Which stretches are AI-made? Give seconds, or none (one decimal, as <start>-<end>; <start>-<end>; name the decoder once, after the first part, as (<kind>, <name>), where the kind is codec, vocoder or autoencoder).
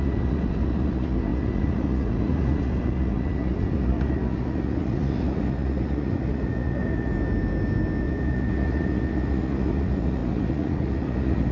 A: 0.0-7.1 (vocoder, Vocos); 8.0-11.5